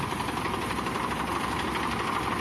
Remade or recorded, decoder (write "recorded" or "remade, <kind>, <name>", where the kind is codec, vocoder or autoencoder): recorded